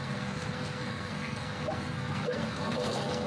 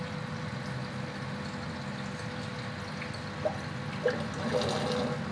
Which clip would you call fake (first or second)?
first